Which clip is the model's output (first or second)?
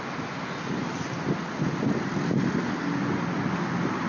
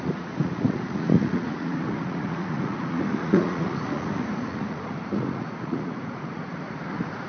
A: second